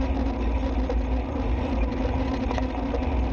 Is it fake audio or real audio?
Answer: real